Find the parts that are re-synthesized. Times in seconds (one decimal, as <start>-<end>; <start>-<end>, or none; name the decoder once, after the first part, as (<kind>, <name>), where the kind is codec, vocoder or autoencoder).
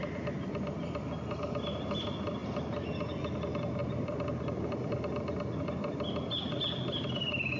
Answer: none